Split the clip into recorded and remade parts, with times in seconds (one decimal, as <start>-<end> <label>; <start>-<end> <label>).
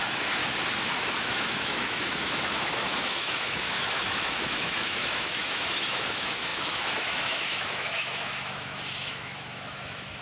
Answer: 0.0-0.4 remade; 0.4-1.2 recorded; 1.2-10.2 remade